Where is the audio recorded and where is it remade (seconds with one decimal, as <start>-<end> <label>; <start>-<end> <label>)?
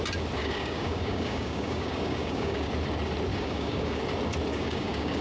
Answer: 0.0-0.4 recorded; 0.4-2.7 remade; 2.7-3.3 recorded; 3.3-4.0 remade; 4.0-4.5 recorded; 4.5-5.2 remade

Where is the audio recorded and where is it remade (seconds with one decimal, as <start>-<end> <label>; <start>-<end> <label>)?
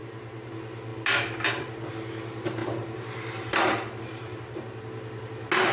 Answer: 0.0-0.5 remade; 0.5-2.6 recorded; 2.6-4.6 remade; 4.6-5.7 recorded